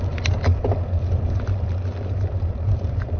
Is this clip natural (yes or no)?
no